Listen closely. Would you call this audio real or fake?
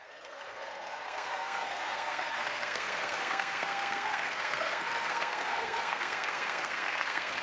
fake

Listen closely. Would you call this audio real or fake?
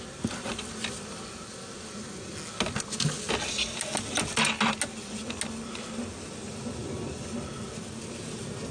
real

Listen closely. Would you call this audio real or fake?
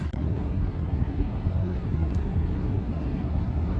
fake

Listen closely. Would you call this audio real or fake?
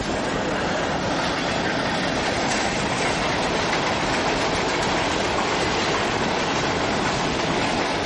real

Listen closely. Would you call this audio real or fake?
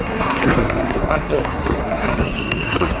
fake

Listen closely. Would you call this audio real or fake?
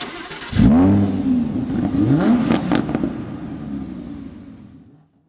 real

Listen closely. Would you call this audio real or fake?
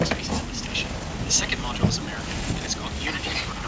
real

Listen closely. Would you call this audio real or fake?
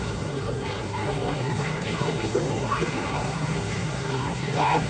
fake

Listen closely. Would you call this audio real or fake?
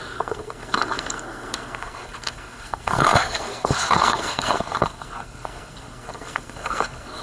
fake